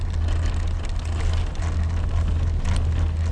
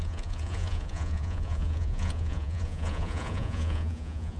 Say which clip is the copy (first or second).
second